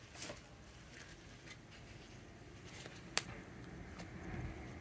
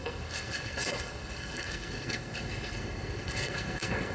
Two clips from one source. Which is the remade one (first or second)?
second